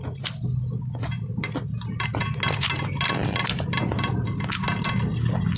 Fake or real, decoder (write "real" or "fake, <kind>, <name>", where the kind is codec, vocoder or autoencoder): real